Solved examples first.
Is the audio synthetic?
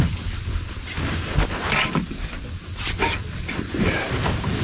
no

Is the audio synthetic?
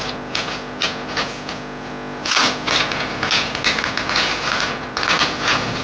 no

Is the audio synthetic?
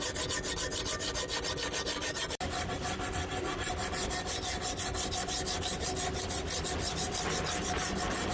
no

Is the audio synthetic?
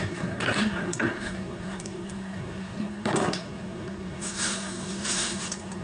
yes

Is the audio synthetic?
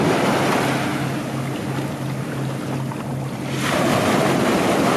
no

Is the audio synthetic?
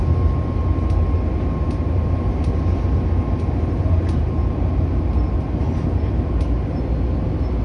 no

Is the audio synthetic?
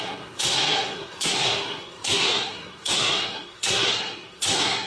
yes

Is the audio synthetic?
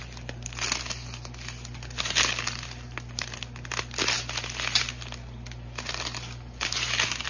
no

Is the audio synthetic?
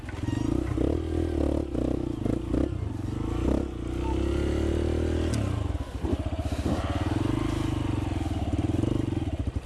no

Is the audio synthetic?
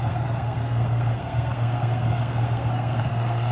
yes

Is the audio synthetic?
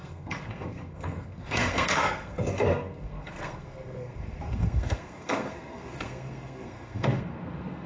yes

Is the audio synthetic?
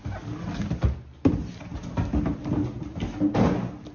no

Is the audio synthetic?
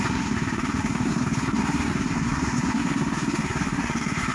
yes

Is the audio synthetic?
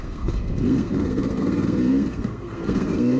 yes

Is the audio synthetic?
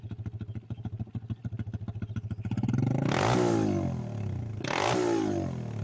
no